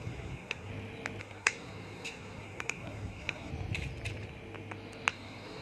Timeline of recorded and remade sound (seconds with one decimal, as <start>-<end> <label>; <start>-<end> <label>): 0.0-0.7 remade; 0.7-1.2 recorded; 1.2-3.5 remade; 3.5-5.1 recorded; 5.1-5.6 remade